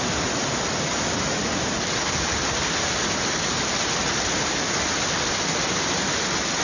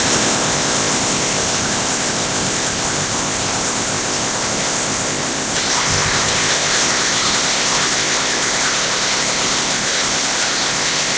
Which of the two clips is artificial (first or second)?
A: second